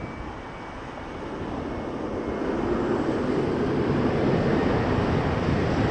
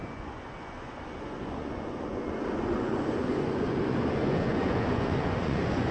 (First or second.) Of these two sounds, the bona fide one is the first